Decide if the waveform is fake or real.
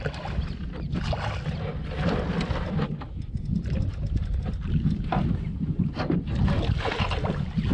real